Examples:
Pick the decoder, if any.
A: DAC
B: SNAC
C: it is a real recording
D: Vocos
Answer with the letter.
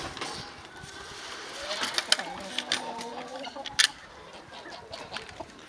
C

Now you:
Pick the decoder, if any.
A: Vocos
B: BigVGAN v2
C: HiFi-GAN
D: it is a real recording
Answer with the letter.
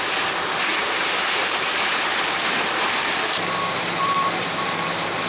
B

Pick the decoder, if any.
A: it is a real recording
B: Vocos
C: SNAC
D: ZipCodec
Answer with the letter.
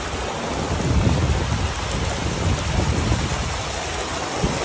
A